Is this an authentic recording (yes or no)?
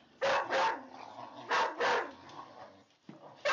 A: yes